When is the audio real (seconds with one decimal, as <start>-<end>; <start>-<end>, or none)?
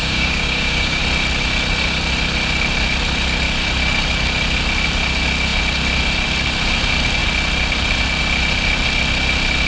1.0-9.7